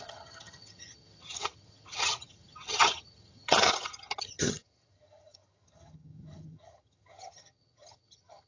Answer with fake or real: fake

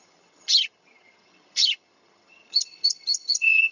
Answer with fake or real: fake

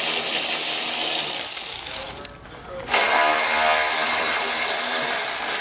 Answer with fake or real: real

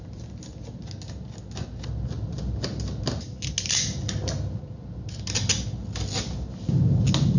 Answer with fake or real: real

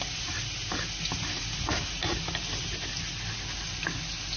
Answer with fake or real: real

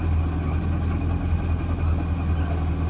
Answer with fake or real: real